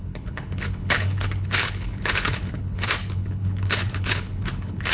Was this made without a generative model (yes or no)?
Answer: no